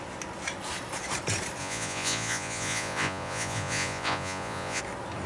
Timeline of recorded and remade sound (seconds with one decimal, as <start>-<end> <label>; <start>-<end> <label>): 0.0-1.6 recorded; 1.6-4.8 remade; 4.8-5.3 recorded